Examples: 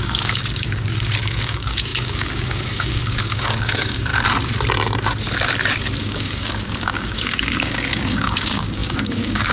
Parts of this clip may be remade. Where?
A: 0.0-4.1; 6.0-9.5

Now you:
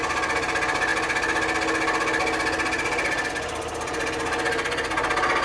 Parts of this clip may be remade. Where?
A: none

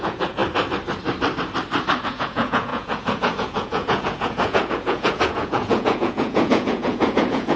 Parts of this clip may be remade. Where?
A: 0.0-0.4; 2.1-7.6

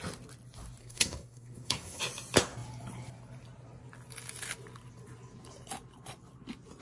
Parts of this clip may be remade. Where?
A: 0.8-2.0